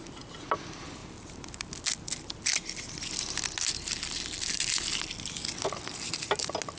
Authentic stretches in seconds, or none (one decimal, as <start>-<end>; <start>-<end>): 0.0-1.0; 1.7-6.8